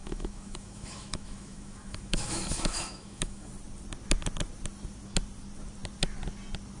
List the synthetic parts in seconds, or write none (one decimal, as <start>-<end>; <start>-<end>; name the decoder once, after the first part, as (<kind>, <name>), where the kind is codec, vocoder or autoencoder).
0.0-3.5 (autoencoder, DAC-VAE)